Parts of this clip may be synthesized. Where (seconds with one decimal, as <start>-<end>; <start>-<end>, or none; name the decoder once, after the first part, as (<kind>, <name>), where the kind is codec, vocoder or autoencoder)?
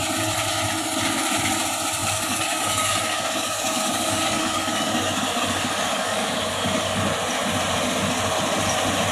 2.0-7.0 (codec, DAC)